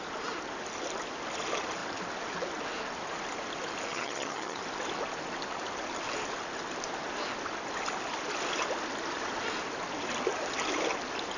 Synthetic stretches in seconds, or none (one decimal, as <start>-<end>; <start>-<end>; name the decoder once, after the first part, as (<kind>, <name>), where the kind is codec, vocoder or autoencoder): 3.9-4.6 (vocoder, HiFi-GAN)